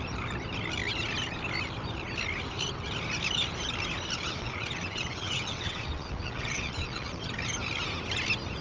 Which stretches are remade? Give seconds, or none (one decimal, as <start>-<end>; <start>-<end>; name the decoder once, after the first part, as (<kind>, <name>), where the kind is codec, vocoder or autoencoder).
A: 4.2-7.3 (vocoder, WaveNeXt)